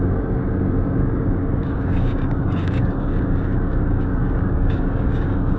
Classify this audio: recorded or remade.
remade